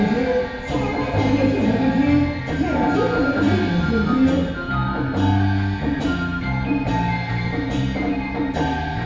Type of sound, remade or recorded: recorded